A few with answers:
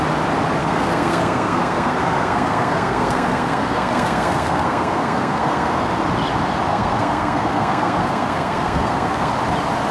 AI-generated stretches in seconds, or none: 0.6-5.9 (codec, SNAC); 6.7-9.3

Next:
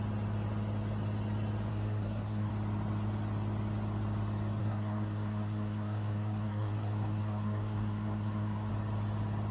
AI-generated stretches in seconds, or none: 1.7-2.5 (codec, SNAC); 4.6-8.7

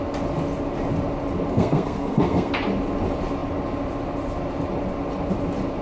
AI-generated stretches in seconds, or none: 1.5-2.5 (codec, SNAC)